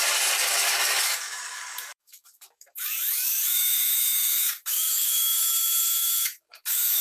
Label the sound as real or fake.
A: fake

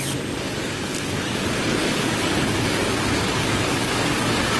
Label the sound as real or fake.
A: fake